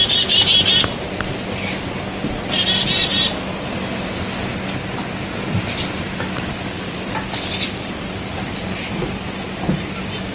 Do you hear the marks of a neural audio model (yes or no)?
no